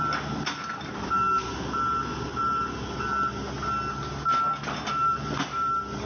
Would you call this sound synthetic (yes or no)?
no